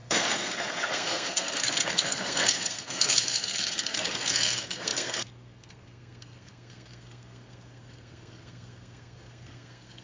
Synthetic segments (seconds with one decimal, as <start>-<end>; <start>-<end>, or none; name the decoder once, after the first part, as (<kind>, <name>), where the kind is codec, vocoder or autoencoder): 0.0-10.0 (codec, SNAC)